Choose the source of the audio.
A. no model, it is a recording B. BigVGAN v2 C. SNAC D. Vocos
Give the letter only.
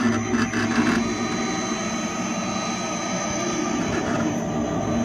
A